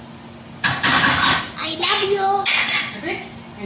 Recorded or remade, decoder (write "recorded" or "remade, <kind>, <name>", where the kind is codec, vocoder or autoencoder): recorded